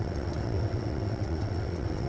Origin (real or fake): fake